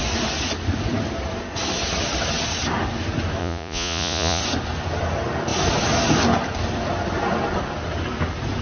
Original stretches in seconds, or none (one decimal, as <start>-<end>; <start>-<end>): 0.0-3.4; 4.4-8.6